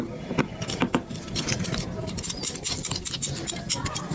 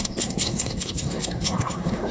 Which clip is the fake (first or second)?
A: second